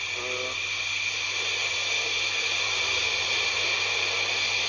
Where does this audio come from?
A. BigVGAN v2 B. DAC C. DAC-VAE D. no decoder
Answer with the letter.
D